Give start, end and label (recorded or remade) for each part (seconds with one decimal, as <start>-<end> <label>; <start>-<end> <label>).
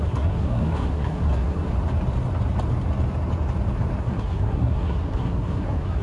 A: 0.0-1.7 remade; 1.7-4.0 recorded; 4.0-6.0 remade